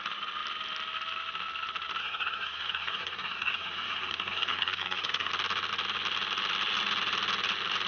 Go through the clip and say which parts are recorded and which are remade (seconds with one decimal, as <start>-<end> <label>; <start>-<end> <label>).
0.0-2.0 recorded; 2.0-5.3 remade; 5.3-7.9 recorded